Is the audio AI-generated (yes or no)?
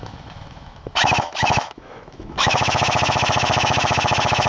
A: yes